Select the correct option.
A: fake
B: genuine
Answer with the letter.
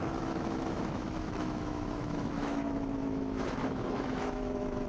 A